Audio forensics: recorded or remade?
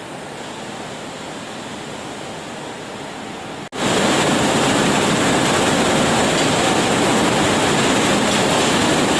recorded